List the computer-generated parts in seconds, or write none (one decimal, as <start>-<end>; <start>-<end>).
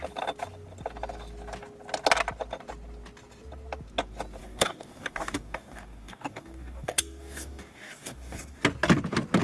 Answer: 4.4-8.6